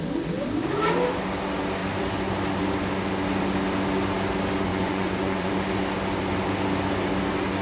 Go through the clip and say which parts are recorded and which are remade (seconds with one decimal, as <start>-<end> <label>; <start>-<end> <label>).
0.0-4.7 recorded; 4.7-5.5 remade; 5.5-7.6 recorded